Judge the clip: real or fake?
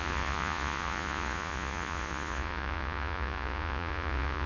fake